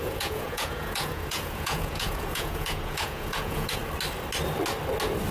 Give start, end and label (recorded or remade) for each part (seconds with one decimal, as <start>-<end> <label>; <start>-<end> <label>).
0.0-3.8 remade; 3.8-5.3 recorded